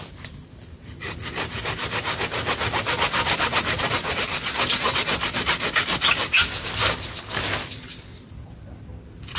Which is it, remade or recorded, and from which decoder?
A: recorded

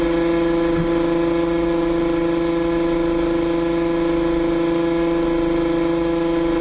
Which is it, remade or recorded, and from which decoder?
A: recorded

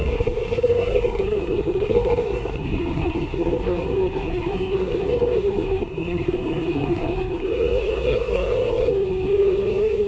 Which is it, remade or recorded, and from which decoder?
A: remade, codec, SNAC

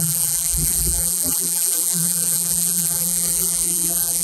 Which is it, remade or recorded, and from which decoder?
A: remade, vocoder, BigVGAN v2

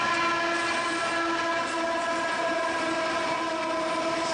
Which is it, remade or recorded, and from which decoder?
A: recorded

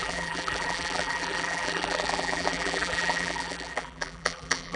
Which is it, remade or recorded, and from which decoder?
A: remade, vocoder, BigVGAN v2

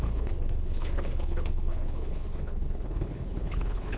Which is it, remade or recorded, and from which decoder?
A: remade, codec, HILCodec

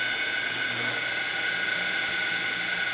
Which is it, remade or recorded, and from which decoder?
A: recorded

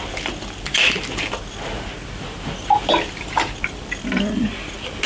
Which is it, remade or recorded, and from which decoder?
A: recorded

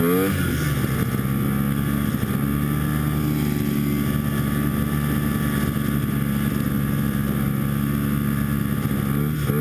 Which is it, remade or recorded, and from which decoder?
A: recorded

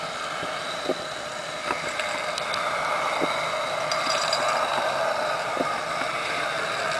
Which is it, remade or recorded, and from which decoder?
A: recorded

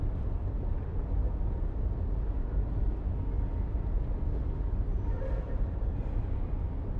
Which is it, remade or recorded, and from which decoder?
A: recorded